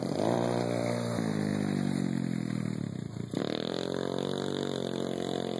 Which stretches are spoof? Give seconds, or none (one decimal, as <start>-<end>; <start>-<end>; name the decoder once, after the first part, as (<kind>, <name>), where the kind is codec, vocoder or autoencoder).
0.0-5.6 (vocoder, BigVGAN v2)